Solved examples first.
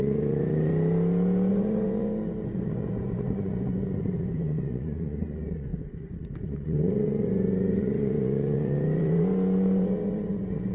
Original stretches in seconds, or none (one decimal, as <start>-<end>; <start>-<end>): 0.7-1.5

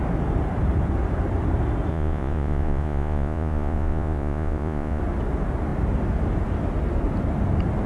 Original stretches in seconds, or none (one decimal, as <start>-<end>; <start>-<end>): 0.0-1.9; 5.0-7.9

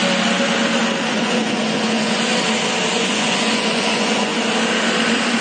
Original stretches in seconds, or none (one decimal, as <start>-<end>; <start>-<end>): 0.0-1.1; 2.3-2.9; 4.3-5.4